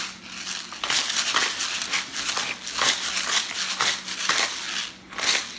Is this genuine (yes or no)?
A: yes